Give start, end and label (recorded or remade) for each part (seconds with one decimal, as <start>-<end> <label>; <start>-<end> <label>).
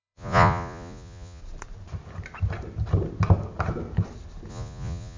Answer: 0.0-1.4 remade; 1.4-4.5 recorded; 4.5-5.2 remade